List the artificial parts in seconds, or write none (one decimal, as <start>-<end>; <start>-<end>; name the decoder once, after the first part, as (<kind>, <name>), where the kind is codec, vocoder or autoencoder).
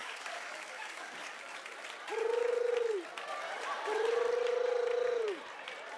0.0-1.4 (codec, DAC)